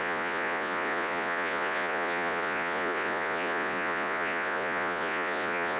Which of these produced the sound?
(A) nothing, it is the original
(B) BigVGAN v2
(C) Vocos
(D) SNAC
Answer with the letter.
C